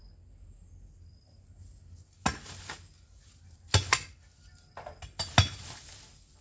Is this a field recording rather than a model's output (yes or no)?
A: yes